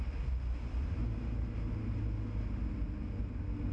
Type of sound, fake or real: real